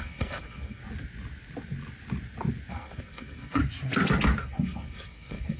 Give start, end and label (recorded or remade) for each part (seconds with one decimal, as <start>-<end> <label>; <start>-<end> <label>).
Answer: 0.0-0.8 remade; 0.8-2.7 recorded; 2.7-3.6 remade; 3.6-4.4 recorded; 4.4-5.6 remade